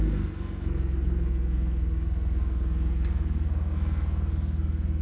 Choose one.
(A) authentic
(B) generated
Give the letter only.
B